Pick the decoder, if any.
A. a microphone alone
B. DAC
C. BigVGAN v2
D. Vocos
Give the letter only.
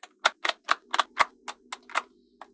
A